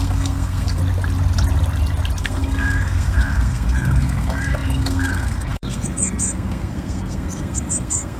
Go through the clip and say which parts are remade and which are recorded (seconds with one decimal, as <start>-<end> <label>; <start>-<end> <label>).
0.0-0.8 remade; 0.8-2.2 recorded; 2.2-8.2 remade